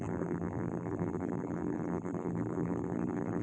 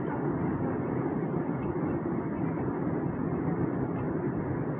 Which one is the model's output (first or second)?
first